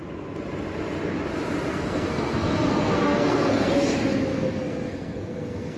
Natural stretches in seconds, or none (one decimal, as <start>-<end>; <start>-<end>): 0.0-1.7; 3.7-4.3